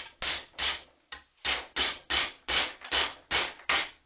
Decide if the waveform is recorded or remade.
recorded